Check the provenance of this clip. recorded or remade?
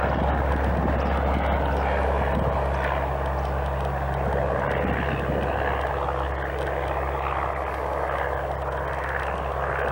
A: recorded